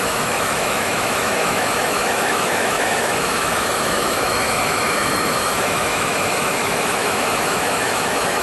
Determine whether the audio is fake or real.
fake